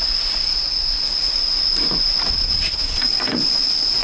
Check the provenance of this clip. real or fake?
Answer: fake